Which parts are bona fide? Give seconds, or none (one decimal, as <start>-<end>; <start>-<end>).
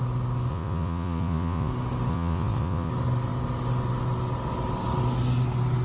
0.0-0.5; 1.7-2.1; 2.9-5.8